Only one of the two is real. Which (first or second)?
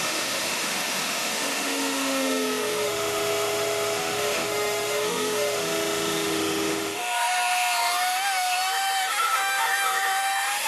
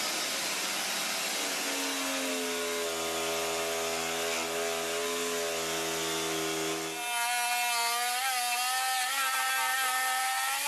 second